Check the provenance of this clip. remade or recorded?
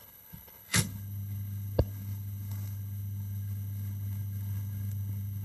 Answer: remade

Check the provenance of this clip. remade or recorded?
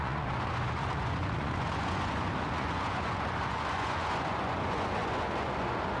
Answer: remade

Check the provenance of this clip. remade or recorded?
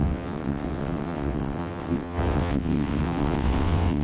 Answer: remade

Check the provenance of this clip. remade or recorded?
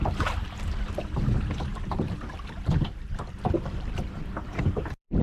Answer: remade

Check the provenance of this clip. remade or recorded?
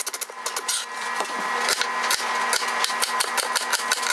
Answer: recorded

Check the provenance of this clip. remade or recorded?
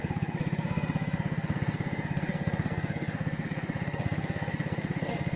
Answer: remade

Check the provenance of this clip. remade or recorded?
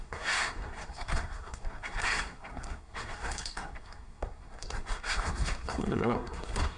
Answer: remade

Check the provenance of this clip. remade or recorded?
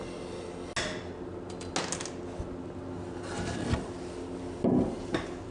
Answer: recorded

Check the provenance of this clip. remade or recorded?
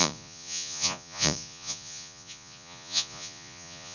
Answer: remade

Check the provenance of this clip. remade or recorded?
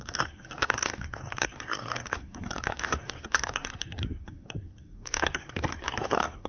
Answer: remade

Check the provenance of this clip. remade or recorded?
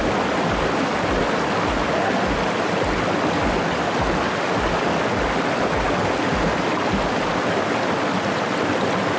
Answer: recorded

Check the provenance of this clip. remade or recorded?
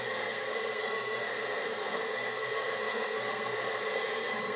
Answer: remade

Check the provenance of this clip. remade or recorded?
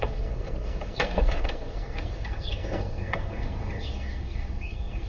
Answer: remade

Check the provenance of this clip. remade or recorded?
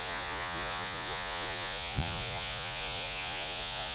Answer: remade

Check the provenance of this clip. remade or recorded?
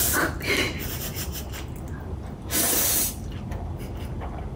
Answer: recorded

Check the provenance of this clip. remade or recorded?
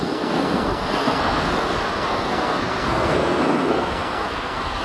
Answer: remade